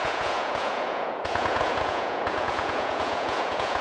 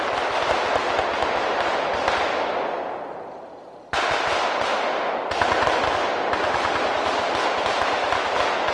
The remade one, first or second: first